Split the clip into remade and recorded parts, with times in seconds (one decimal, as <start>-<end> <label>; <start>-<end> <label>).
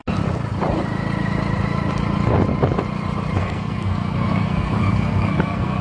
0.0-3.4 recorded; 3.4-5.8 remade